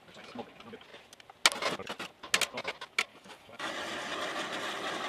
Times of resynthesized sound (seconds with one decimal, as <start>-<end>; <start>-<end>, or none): 3.1-3.7